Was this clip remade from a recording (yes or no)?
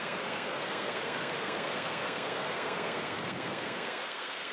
yes